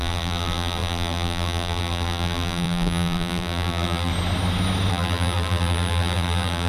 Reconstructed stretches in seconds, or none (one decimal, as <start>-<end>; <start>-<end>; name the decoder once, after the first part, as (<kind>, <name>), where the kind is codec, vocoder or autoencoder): 0.0-4.1 (vocoder, BigVGAN v2); 4.9-6.7